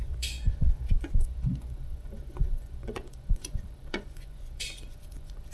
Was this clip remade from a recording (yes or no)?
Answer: yes